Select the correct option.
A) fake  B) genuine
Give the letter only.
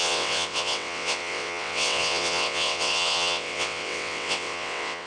A